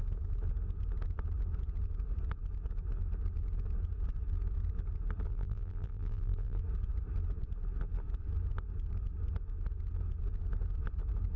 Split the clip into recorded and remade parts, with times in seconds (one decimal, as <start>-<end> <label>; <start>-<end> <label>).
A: 0.0-5.3 recorded; 5.3-6.6 remade; 6.6-11.4 recorded